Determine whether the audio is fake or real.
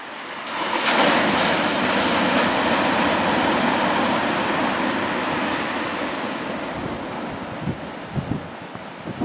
real